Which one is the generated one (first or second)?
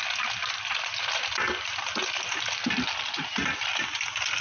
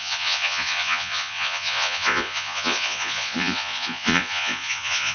second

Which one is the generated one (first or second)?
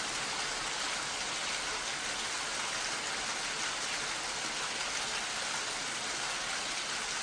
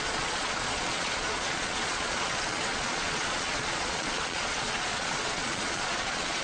second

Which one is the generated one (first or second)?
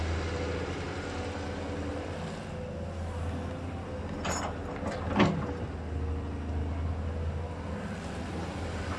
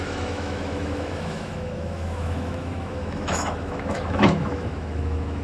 second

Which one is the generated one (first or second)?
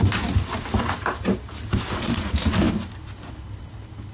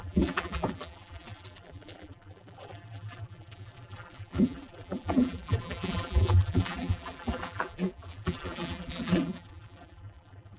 second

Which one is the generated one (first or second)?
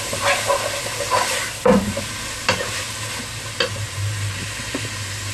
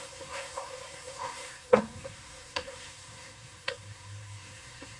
second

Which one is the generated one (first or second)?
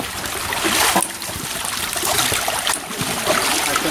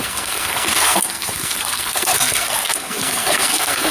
second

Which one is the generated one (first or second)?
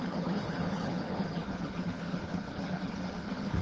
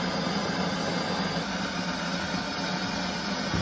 first